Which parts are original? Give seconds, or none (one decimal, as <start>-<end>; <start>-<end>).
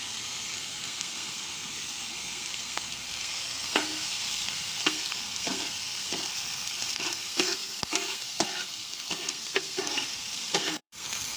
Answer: none